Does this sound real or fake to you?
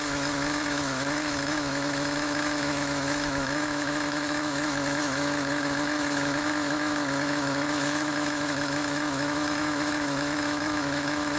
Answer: fake